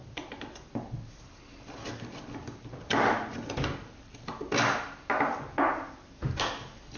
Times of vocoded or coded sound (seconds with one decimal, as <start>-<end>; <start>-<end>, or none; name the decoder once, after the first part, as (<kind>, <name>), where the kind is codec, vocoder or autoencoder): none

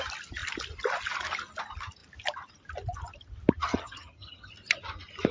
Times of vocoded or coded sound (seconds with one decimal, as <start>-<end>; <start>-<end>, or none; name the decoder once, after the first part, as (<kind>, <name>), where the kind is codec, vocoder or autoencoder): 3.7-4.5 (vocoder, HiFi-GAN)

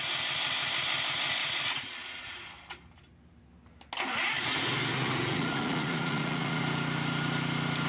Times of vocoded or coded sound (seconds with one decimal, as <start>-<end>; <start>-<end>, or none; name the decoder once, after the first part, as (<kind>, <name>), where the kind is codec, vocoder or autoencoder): 1.4-2.6 (vocoder, Vocos); 4.9-6.6

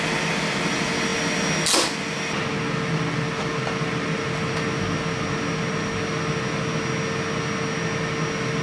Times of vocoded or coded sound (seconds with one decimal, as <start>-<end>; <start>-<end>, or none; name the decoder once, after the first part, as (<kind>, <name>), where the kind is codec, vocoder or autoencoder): none

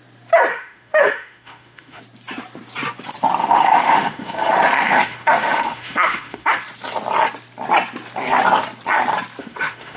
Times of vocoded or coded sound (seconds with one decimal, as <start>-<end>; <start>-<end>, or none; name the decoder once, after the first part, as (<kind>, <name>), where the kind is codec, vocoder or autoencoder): 0.5-2.0 (autoencoder, DAC-VAE); 3.4-6.5; 9.4-10.0